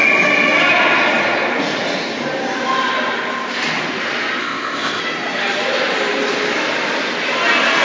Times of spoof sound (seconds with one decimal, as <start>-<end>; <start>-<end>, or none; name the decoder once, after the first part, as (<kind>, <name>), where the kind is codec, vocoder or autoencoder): 4.4-5.0 (codec, ZipCodec)